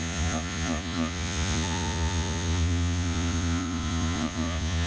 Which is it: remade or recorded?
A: remade